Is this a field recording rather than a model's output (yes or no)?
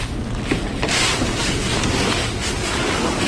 yes